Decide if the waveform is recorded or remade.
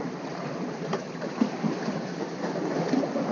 recorded